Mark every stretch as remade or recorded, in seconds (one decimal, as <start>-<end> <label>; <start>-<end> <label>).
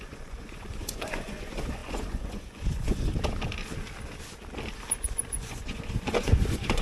0.0-3.1 remade; 3.1-5.0 recorded; 5.0-6.8 remade